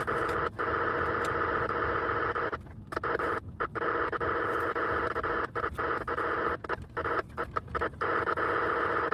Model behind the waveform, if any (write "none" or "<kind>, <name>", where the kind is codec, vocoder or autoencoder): none